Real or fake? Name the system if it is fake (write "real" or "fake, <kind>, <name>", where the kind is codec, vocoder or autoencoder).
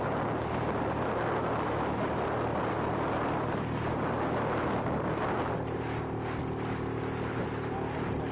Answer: real